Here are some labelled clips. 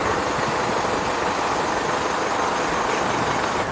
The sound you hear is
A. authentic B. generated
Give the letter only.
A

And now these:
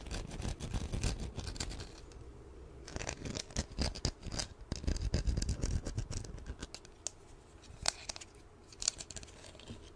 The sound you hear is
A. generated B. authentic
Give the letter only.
B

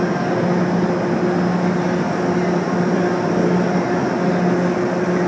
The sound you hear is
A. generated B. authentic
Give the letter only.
B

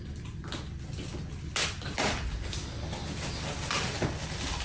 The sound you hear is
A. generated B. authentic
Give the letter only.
B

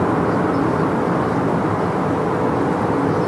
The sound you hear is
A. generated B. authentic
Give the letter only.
B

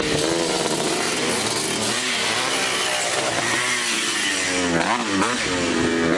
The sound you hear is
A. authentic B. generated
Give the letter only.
A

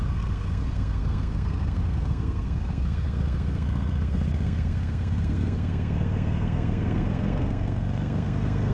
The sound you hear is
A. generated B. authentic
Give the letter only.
A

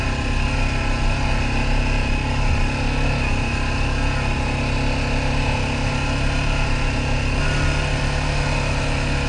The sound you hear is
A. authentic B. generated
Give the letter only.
A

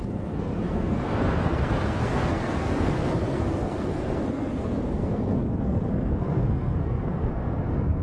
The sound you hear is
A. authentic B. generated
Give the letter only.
B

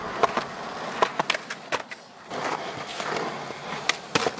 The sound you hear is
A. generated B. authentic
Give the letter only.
B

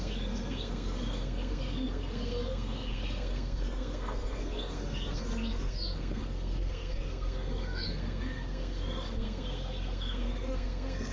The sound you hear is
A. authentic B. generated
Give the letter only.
B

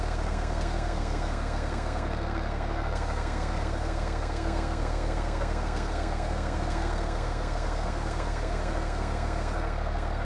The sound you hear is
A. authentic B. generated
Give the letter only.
B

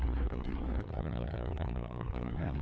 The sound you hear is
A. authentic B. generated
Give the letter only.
B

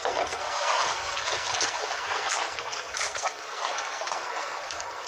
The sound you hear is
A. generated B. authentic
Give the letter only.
A